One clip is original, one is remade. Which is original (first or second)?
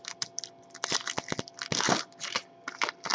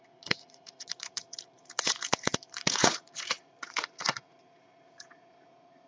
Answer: first